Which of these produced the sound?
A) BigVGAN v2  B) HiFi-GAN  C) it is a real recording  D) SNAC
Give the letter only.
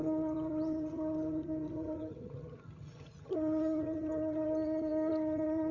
B